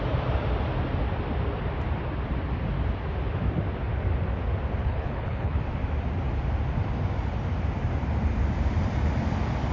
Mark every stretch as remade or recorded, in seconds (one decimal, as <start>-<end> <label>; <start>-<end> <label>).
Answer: 0.0-4.8 recorded; 4.8-5.6 remade; 5.6-9.7 recorded